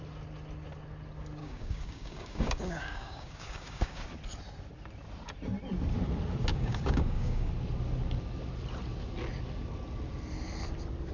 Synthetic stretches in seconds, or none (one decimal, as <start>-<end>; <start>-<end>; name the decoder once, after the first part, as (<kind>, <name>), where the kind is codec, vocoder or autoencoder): 1.4-4.0 (codec, DAC); 6.5-7.5